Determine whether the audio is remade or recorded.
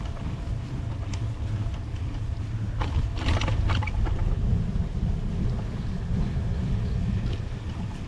recorded